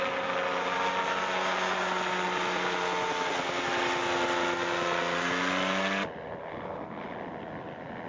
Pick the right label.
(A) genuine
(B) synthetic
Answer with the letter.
A